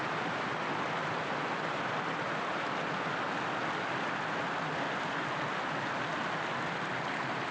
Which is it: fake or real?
real